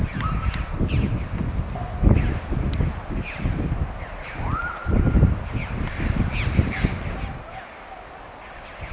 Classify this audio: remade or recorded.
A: recorded